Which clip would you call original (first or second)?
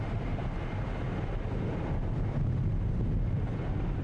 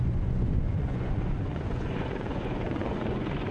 first